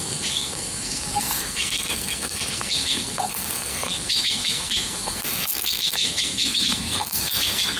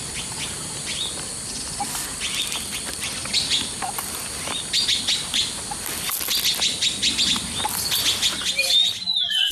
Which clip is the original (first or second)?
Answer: second